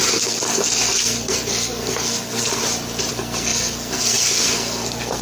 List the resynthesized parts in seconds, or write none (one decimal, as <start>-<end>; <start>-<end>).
0.0-2.6; 3.1-5.2